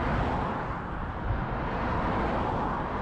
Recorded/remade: recorded